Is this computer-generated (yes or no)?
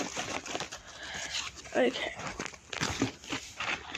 no